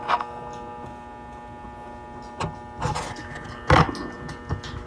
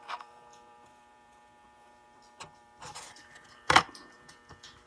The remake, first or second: second